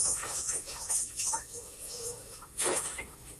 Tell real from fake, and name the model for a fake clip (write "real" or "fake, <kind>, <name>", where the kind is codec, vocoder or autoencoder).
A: fake, autoencoder, DAC-VAE